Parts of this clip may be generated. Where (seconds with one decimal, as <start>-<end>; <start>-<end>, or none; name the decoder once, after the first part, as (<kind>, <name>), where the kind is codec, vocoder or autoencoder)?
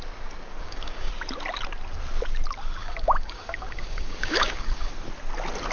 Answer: 0.6-1.1 (codec, DAC); 2.8-4.9